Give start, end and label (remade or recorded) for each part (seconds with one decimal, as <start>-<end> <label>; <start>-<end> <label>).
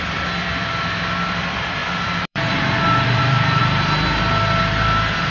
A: 0.0-3.6 remade; 3.6-4.6 recorded; 4.6-5.3 remade